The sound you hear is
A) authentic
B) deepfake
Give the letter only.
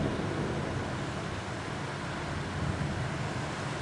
A